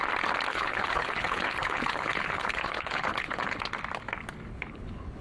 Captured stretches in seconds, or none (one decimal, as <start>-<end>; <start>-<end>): 0.0-0.5; 3.6-4.5

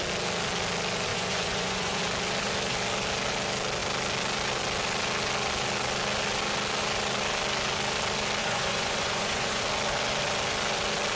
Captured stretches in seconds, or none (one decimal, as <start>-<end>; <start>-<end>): 0.0-1.1; 2.0-8.4; 9.6-11.2

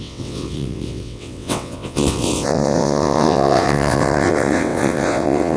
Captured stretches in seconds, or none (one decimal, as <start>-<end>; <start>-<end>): none

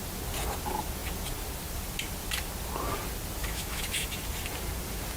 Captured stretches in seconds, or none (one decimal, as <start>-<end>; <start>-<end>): 0.0-3.4; 4.2-5.2

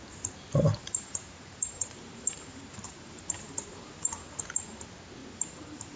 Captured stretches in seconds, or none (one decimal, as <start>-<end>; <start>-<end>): 0.0-0.8; 4.4-5.2